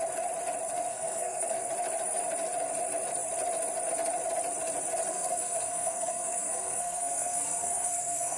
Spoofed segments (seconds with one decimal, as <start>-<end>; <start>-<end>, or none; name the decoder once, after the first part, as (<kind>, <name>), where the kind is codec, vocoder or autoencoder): 0.9-1.7 (codec, SNAC); 5.1-8.4

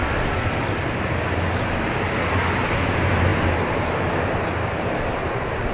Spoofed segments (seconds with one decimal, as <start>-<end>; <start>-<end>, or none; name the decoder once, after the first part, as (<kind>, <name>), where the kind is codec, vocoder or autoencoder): none